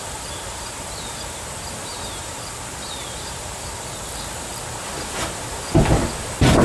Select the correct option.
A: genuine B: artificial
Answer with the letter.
A